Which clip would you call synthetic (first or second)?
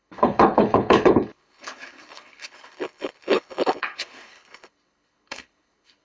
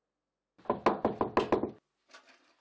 first